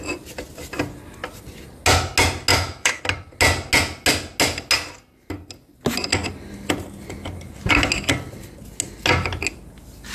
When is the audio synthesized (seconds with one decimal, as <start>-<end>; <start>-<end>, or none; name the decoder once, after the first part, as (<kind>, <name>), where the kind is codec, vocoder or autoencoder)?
2.5-3.0 (autoencoder, DAC-VAE)